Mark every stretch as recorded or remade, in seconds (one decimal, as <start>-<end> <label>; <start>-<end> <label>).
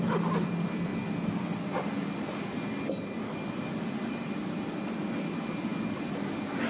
0.0-6.7 recorded